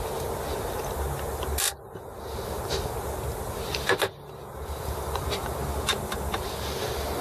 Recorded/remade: recorded